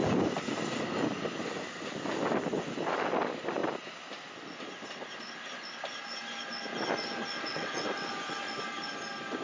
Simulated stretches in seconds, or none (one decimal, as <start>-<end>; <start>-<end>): 7.5-8.1